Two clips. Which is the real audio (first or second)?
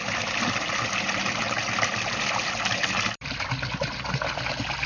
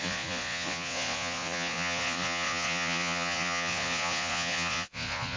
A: first